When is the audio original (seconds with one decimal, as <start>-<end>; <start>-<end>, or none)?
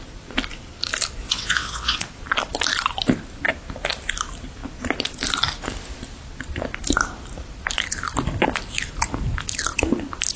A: 0.0-1.2; 2.0-10.4